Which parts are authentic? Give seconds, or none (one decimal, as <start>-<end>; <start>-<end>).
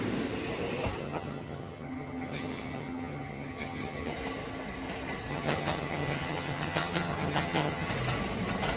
0.0-1.0; 4.1-5.3; 7.9-8.8